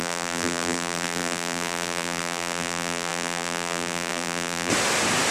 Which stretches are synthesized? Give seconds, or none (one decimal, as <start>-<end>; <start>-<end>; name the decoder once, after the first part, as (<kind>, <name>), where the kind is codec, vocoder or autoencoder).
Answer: 0.0-4.7 (vocoder, BigVGAN v2)